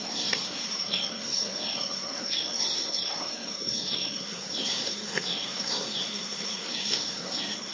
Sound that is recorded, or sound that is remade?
remade